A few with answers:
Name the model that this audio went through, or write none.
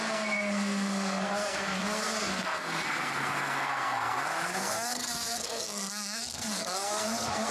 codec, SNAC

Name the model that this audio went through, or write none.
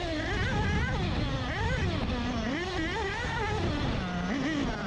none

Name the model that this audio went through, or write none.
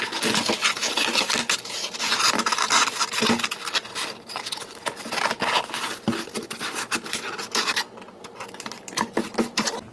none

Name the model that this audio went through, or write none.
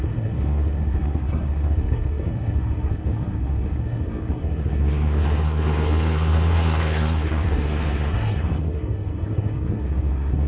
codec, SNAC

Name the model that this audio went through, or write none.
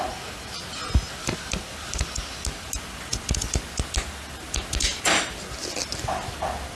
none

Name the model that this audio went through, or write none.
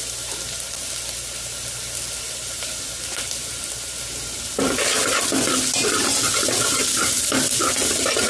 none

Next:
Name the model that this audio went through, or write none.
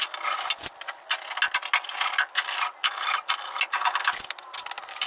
none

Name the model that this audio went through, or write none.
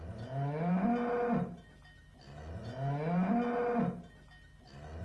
none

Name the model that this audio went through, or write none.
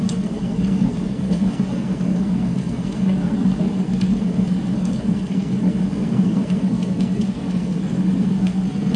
codec, SNAC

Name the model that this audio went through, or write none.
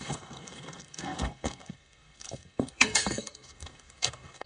codec, SNAC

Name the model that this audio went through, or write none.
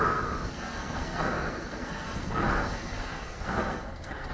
codec, SNAC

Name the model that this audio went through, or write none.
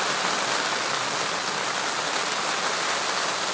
none